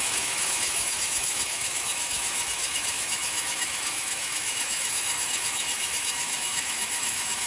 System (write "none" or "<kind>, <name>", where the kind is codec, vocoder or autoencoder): autoencoder, DAC-VAE